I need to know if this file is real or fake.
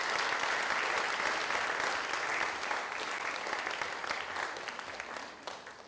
real